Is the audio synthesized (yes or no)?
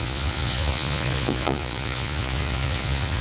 yes